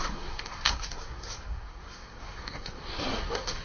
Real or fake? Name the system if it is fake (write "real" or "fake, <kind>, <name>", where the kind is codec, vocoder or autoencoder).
fake, codec, SNAC